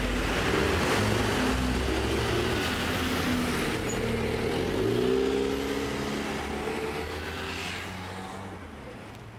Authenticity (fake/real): real